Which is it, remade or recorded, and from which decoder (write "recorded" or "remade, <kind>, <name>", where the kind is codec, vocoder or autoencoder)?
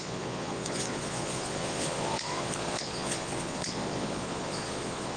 remade, vocoder, Vocos